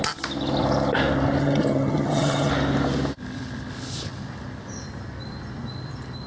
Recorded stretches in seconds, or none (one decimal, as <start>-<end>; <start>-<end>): 0.0-1.4; 2.5-6.3

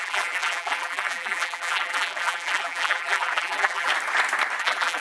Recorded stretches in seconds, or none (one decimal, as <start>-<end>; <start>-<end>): 3.9-4.6

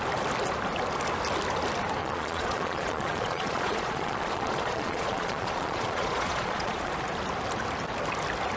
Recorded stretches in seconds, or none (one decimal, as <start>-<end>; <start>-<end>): 0.0-2.0; 6.9-8.6

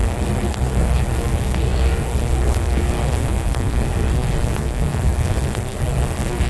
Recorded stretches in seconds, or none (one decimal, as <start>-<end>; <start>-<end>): none

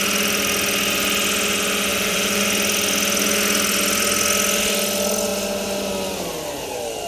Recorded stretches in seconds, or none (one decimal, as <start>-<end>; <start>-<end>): 0.0-1.9; 2.4-7.1

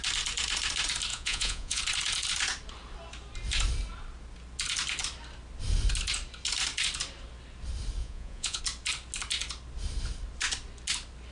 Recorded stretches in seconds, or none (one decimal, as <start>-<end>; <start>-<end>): 0.0-1.1; 1.8-8.0; 8.6-11.3

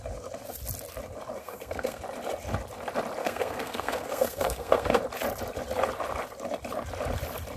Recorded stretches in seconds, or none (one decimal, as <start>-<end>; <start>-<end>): 0.0-1.4; 2.0-3.2; 5.0-7.6

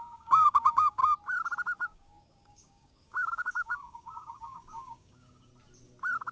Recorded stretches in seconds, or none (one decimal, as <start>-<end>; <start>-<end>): 1.0-1.9; 5.5-6.3